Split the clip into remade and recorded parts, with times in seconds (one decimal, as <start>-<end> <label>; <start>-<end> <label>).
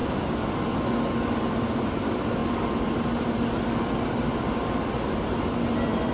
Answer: 0.0-6.1 recorded